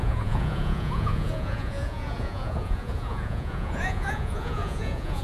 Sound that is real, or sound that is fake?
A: fake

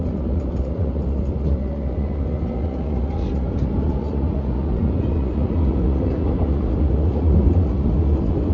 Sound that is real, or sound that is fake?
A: fake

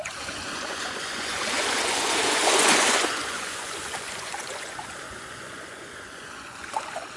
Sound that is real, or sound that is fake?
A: fake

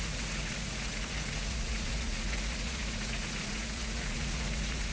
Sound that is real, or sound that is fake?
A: fake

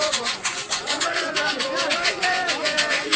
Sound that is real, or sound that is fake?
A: fake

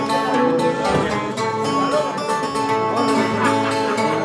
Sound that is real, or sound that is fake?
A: real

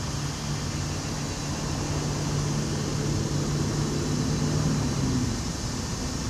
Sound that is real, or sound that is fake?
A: real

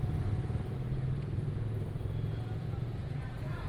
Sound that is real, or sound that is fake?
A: fake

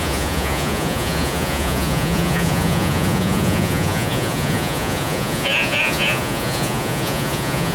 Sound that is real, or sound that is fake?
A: fake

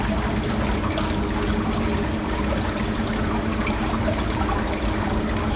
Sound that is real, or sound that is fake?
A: real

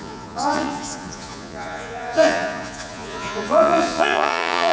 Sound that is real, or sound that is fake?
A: fake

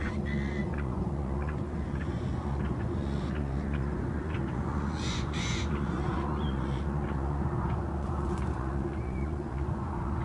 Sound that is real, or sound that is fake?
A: fake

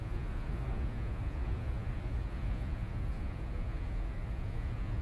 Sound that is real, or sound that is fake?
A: fake